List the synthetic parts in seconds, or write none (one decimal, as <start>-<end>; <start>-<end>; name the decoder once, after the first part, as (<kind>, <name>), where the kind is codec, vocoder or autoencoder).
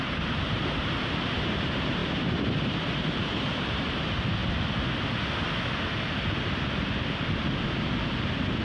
0.0-4.4 (vocoder, BigVGAN v2)